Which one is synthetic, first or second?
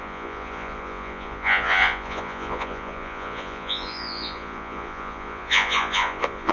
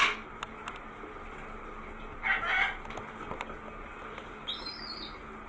first